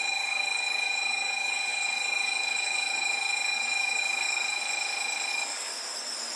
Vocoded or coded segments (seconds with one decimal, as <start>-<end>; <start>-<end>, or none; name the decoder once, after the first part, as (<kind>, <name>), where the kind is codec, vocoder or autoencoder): 0.0-4.6 (codec, DAC); 5.3-5.7